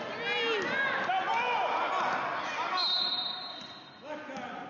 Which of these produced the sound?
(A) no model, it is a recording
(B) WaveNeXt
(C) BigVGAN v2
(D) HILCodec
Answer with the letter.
A